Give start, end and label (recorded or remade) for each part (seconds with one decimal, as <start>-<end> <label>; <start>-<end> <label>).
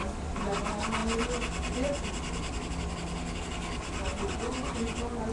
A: 0.0-5.3 recorded